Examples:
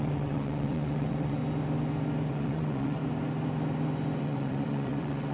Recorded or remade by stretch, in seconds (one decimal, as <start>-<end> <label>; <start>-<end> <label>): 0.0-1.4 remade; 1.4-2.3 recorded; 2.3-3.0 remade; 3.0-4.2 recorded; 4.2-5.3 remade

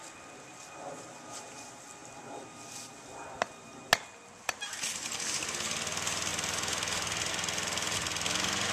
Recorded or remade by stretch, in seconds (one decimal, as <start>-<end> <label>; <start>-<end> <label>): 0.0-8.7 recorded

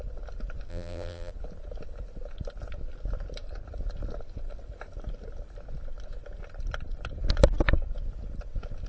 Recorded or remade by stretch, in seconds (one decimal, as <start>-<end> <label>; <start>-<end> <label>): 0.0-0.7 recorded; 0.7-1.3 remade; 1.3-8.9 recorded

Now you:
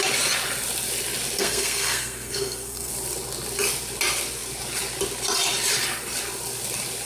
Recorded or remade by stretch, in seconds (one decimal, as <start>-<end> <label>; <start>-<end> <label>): 0.0-1.4 recorded; 1.4-2.9 remade; 2.9-7.1 recorded

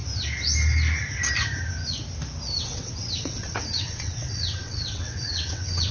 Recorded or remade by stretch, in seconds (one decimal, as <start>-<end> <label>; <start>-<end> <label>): 0.0-2.6 recorded; 2.6-5.9 remade

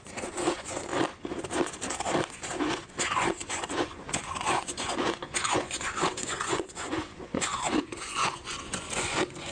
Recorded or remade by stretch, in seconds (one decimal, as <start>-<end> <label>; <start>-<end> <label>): 0.0-0.9 remade; 0.9-2.6 recorded; 2.6-9.5 remade

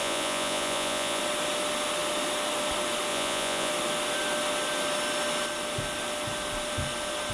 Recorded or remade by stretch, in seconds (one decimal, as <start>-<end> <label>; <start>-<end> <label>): 0.0-1.2 remade; 1.2-3.1 recorded; 3.1-3.7 remade; 3.7-7.3 recorded